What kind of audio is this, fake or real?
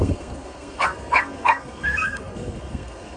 fake